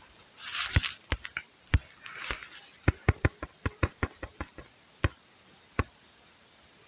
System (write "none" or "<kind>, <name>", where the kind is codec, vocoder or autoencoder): none